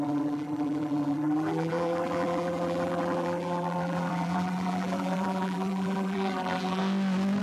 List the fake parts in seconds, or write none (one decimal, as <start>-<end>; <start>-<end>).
0.0-6.8

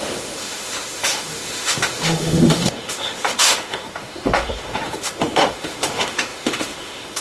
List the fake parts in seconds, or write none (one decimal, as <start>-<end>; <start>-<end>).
0.0-7.2